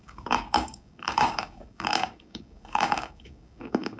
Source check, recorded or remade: remade